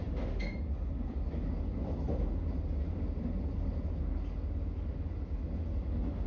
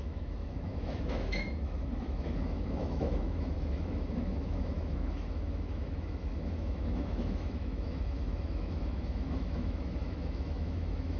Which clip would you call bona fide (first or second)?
first